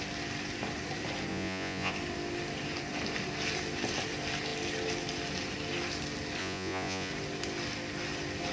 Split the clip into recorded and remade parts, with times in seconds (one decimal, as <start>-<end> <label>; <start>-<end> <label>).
0.0-1.3 recorded; 1.3-1.9 remade; 1.9-6.4 recorded; 6.4-7.1 remade; 7.1-8.5 recorded